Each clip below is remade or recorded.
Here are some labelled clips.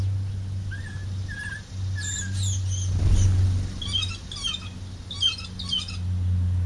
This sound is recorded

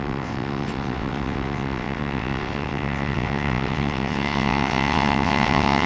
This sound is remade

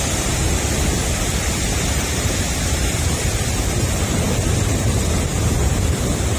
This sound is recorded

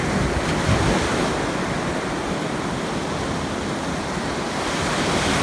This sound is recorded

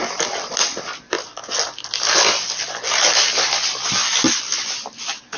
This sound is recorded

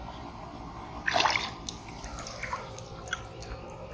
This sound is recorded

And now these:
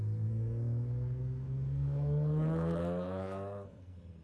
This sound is remade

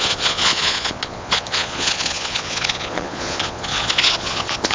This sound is remade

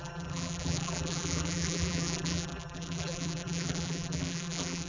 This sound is remade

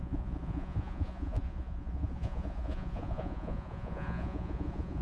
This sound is remade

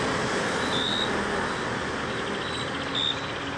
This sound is recorded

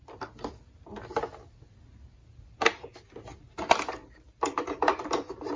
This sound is recorded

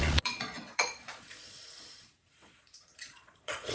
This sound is remade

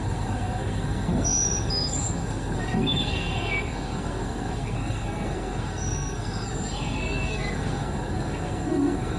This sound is remade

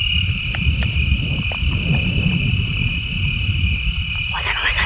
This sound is recorded